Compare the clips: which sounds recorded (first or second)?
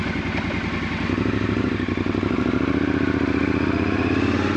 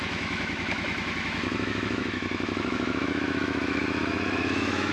first